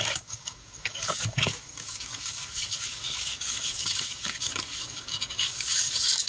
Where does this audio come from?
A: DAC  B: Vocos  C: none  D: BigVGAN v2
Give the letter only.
A